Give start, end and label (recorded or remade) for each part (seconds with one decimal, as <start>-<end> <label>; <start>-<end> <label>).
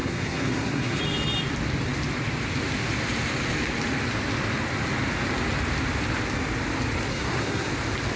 0.0-1.0 remade; 1.0-7.1 recorded; 7.1-7.7 remade; 7.7-8.2 recorded